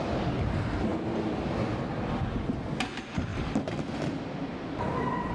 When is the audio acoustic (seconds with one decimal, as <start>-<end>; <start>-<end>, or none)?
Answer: 0.0-5.3